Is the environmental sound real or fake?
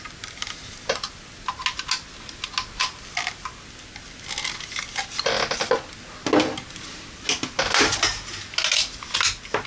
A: real